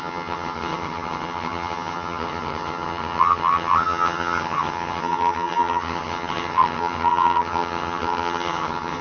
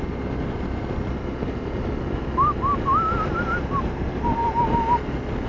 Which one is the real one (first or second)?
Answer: second